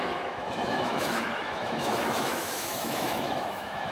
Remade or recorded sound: remade